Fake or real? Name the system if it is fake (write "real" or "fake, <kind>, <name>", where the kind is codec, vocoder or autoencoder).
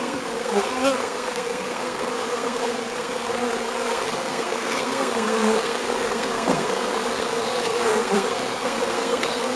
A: fake, codec, SNAC